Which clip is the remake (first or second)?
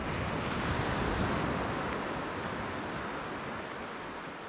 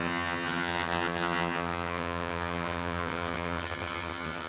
second